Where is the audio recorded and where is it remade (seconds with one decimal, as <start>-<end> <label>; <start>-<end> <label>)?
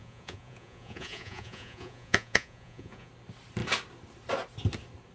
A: 0.0-3.1 remade; 3.1-5.1 recorded